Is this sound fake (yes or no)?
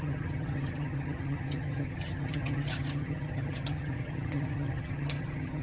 yes